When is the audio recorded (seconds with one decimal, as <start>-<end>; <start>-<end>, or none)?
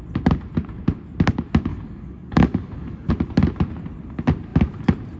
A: 0.0-1.7; 3.1-5.2